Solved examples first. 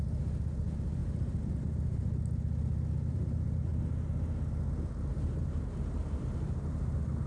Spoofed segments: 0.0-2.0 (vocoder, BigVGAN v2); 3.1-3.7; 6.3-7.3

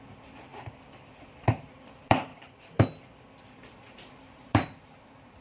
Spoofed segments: 0.0-2.3 (vocoder, BigVGAN v2); 3.4-5.4